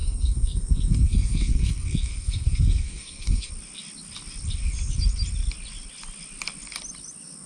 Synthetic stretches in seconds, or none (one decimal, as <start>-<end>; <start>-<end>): 0.0-3.5